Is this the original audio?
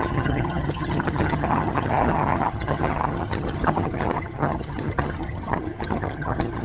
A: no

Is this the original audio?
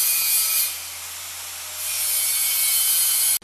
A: yes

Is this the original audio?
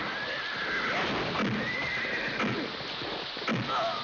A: yes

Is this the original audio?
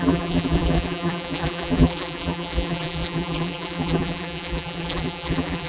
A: no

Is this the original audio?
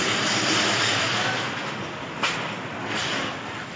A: yes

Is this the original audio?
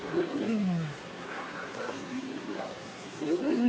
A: no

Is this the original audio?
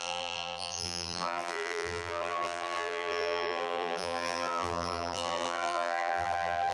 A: no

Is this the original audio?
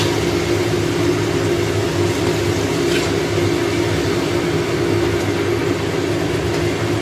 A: yes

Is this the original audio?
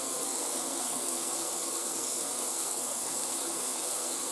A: no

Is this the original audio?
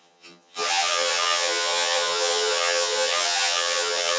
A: no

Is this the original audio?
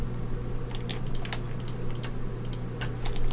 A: yes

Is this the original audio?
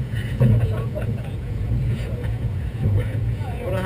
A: no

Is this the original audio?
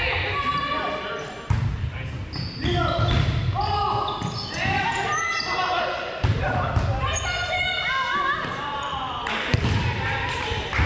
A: yes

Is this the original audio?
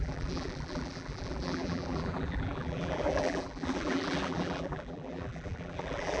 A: no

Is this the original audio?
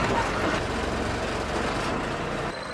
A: yes